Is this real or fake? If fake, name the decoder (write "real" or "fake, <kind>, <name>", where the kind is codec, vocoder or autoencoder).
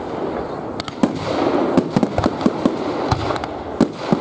real